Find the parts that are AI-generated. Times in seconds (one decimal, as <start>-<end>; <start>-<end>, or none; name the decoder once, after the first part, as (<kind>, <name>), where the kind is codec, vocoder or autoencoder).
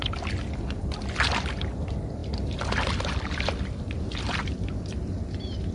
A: none